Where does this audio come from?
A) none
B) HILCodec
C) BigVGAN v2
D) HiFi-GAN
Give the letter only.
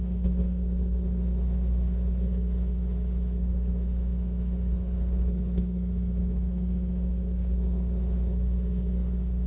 B